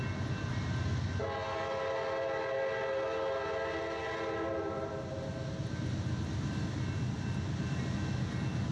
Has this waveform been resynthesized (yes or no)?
no